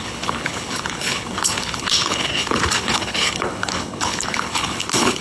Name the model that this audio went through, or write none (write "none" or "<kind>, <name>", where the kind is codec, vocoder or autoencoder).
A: codec, HILCodec